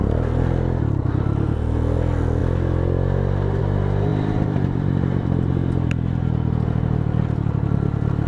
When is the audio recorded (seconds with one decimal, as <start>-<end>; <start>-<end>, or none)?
0.0-4.1; 5.5-8.3

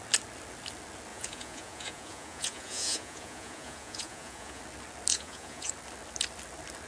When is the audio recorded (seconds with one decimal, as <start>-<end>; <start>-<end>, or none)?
0.0-1.1; 4.6-5.1; 5.7-6.9

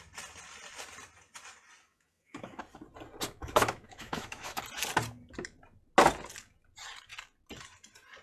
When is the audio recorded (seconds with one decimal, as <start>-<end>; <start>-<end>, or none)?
0.0-1.9; 2.6-3.4; 4.6-8.2

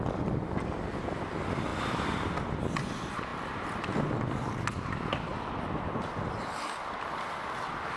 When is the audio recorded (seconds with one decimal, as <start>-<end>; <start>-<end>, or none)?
0.0-8.0

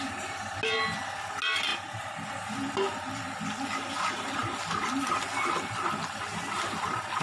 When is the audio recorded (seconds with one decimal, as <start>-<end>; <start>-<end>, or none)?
0.0-7.2